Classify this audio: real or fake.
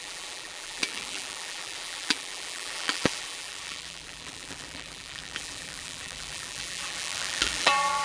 fake